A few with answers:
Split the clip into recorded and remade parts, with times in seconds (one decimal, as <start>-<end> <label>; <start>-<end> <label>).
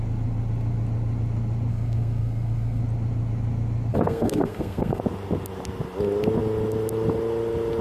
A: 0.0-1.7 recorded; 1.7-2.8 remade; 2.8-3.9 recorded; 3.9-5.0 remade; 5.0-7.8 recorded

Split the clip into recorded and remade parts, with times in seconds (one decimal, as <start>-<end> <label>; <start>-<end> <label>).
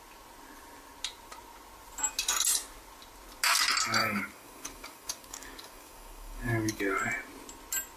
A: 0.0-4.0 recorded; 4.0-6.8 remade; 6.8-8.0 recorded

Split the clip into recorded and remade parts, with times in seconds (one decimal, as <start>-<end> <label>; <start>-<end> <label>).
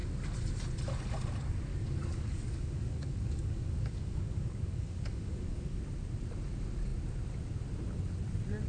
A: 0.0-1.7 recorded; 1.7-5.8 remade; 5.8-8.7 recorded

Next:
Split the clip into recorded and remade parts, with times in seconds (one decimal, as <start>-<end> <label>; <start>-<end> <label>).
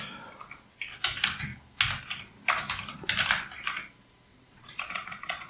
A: 0.0-4.3 recorded; 4.3-5.5 remade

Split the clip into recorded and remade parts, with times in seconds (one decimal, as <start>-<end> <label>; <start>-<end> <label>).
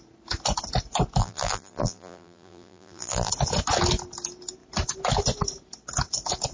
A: 0.0-1.2 recorded; 1.2-3.3 remade; 3.3-6.5 recorded